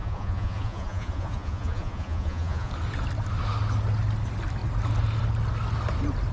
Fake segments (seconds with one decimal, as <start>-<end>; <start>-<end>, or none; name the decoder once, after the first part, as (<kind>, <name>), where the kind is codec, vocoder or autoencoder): 0.0-2.7 (vocoder, Vocos)